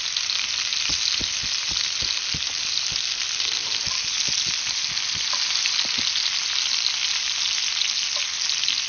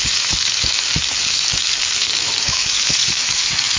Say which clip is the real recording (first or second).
first